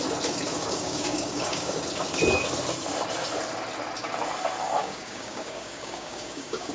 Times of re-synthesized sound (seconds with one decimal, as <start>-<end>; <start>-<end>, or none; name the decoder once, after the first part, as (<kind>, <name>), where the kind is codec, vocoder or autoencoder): 0.6-1.8 (codec, DAC); 4.8-6.7